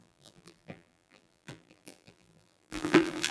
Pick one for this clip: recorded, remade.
remade